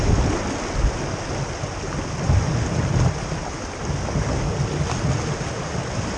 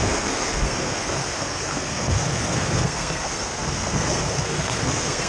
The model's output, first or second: second